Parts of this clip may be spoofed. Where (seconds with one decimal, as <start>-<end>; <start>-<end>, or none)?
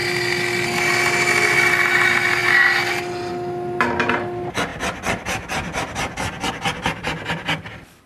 none